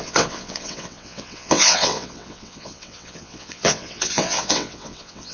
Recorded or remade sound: remade